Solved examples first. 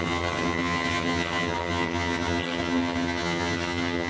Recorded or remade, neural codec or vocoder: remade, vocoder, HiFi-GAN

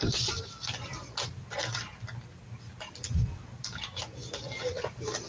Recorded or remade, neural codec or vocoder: recorded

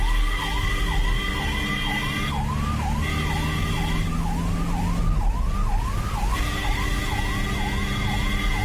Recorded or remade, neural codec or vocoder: recorded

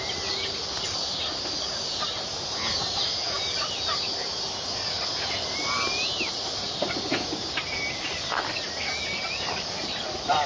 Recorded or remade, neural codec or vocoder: remade, vocoder, BigVGAN v2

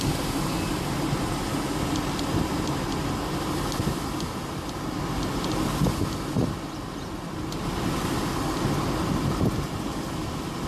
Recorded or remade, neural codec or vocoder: recorded